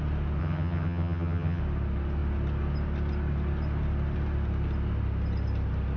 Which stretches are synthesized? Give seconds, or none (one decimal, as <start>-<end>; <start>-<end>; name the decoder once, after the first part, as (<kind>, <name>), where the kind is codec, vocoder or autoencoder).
0.4-1.6 (vocoder, HiFi-GAN)